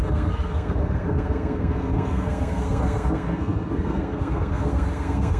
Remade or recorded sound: remade